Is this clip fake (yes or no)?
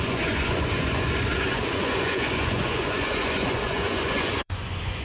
yes